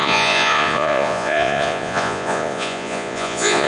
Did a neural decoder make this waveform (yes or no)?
yes